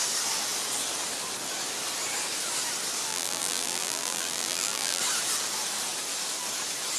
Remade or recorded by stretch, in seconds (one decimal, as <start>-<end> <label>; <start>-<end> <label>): 0.0-3.1 recorded; 3.1-5.0 remade; 5.0-7.0 recorded